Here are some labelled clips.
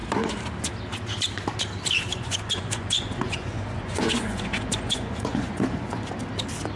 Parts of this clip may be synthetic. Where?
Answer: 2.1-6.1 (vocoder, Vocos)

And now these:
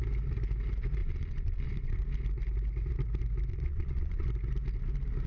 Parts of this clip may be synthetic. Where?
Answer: 1.0-2.0 (vocoder, Vocos); 3.5-4.3

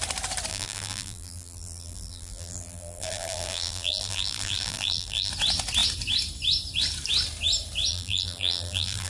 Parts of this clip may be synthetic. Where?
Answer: 0.5-5.3 (vocoder, BigVGAN v2); 7.9-9.1

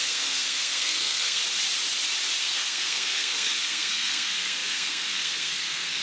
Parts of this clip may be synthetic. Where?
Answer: 0.0-1.4 (codec, SNAC); 2.4-6.0

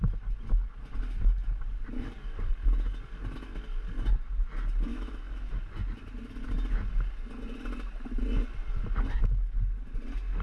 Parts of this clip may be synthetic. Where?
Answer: 4.9-5.6 (autoencoder, DAC-VAE)

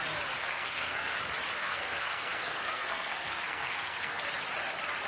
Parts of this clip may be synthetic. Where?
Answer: 0.4-1.2 (codec, SNAC); 1.6-4.2